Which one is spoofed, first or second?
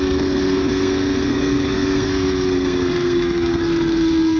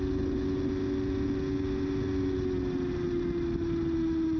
first